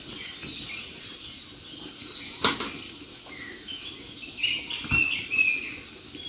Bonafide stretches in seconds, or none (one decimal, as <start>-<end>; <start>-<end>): 0.0-3.1; 3.9-6.3